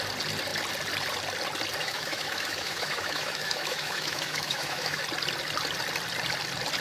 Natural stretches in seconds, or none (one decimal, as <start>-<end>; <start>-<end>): 0.0-1.8; 5.0-6.8